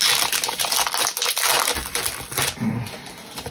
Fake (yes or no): no